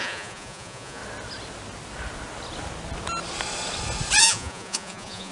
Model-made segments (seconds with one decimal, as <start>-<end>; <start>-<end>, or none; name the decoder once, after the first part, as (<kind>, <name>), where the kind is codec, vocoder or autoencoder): 0.0-1.0 (vocoder, Vocos); 4.2-5.3